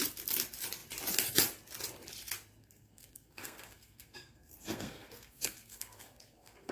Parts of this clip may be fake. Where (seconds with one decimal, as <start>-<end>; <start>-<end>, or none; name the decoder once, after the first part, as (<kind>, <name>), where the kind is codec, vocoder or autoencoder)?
2.6-6.7 (codec, SNAC)